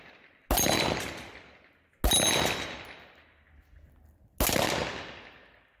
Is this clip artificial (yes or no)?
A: no